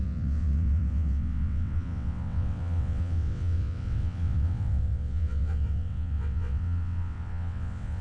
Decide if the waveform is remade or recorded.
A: remade